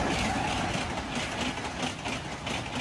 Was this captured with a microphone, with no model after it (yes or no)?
yes